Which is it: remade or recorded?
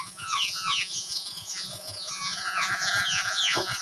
remade